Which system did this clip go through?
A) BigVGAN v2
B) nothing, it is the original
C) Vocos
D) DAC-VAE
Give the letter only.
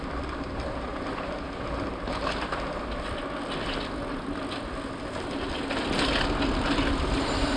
B